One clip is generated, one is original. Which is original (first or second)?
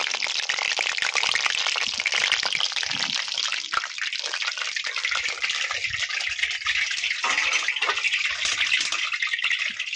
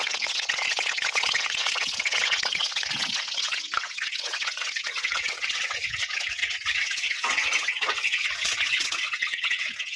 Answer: first